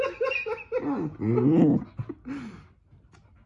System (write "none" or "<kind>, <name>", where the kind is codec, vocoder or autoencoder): none